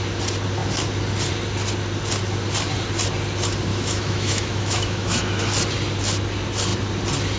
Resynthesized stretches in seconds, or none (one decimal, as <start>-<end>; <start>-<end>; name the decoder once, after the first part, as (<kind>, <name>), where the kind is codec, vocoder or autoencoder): 3.7-5.2 (autoencoder, DAC-VAE)

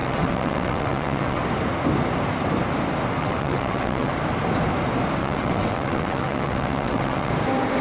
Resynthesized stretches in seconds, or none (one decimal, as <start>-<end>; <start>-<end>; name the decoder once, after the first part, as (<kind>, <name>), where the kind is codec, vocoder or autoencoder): 0.0-1.4 (vocoder, WaveNeXt); 3.2-4.1; 5.2-7.3

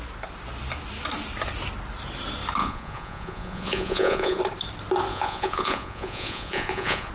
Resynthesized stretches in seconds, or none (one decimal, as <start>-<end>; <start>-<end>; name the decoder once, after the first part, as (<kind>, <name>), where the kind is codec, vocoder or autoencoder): 2.6-4.4 (vocoder, Vocos); 5.1-7.1

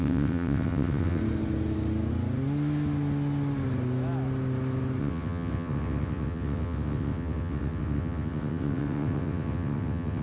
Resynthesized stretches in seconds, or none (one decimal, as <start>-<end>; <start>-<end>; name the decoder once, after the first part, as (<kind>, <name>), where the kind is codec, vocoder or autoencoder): 0.0-1.2 (vocoder, WaveNeXt); 5.0-10.2

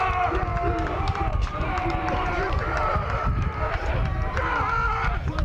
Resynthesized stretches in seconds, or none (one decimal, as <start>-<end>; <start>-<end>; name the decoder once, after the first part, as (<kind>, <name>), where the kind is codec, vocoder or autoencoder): 0.5-3.7 (vocoder, BigVGAN v2)

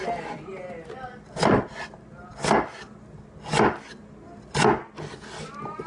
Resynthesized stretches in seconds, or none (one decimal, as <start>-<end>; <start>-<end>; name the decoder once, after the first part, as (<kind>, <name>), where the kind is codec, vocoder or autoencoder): none